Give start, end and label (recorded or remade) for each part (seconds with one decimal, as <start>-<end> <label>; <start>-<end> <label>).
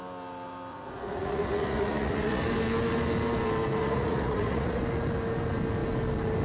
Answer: 0.0-0.7 recorded; 0.7-2.4 remade; 2.4-3.8 recorded; 3.8-4.8 remade; 4.8-6.4 recorded